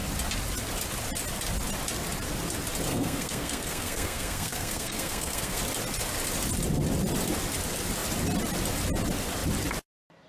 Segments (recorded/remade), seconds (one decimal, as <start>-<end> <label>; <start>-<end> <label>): 0.0-2.9 recorded; 2.9-5.6 remade; 5.6-10.3 recorded